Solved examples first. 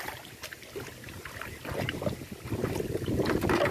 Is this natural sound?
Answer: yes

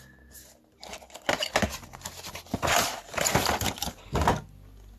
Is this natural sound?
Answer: yes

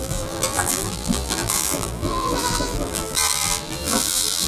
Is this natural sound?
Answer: no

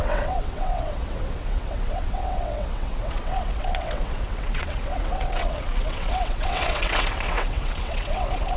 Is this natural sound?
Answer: no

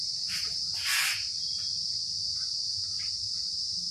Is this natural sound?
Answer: yes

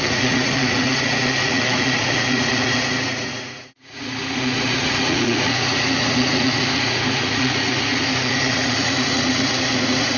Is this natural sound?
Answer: no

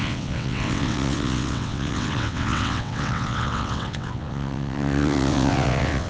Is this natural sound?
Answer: no